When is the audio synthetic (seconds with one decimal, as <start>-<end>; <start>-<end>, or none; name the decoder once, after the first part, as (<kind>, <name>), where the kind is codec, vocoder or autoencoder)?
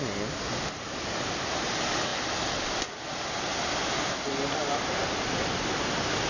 none